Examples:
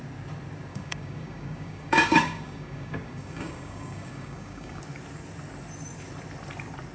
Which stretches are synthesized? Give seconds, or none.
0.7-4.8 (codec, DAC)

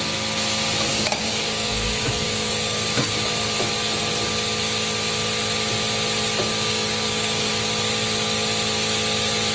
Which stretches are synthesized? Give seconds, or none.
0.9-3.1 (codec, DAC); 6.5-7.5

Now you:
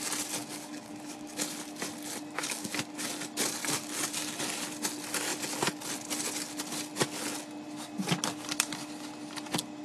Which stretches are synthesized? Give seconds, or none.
0.4-1.4 (codec, DAC); 2.4-3.1